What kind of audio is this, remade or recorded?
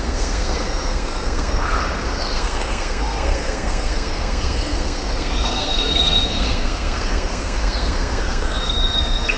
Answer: remade